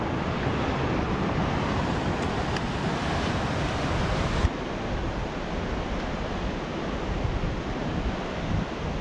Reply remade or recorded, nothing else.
recorded